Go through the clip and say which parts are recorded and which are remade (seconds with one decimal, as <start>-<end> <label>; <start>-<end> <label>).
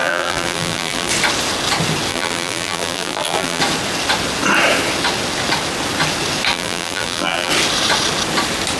0.0-1.1 remade; 1.1-2.1 recorded; 2.1-3.6 remade; 3.6-6.5 recorded; 6.5-7.5 remade; 7.5-8.8 recorded